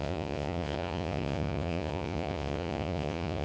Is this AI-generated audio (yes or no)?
yes